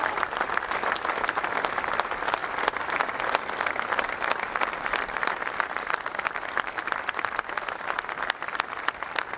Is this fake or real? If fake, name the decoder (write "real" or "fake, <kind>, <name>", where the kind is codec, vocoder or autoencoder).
real